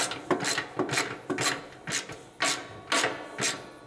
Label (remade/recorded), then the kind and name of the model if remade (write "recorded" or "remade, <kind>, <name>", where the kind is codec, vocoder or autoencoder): recorded